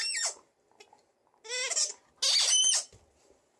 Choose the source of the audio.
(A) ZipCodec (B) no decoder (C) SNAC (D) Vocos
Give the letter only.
B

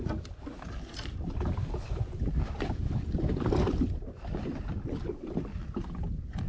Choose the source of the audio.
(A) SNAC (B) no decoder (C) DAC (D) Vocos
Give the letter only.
B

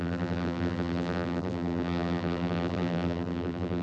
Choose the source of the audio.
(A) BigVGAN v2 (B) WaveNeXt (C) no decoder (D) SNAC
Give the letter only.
A